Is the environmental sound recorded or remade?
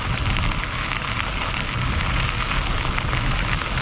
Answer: recorded